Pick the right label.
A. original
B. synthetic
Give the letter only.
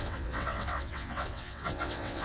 B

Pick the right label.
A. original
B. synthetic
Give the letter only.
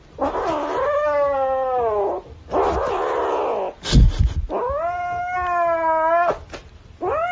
A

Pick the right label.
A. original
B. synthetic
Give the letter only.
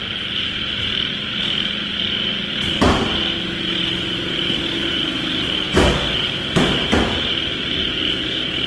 A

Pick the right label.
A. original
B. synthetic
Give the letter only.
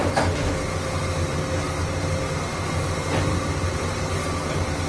A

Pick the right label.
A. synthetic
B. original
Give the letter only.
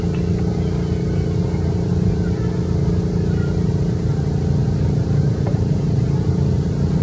B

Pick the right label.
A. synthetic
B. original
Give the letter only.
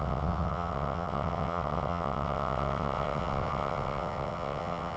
A